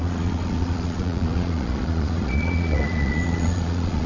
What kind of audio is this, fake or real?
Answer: fake